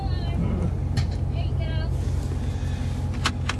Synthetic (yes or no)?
no